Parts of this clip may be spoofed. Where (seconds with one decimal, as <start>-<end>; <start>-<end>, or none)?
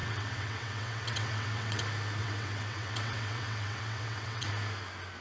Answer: 0.0-1.8; 2.2-4.5